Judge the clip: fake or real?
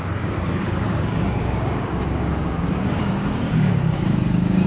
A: fake